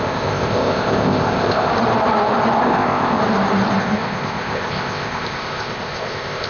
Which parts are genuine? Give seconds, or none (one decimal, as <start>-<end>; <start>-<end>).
1.7-2.6; 3.2-3.8